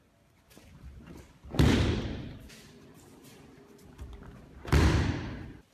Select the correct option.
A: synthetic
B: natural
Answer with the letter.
A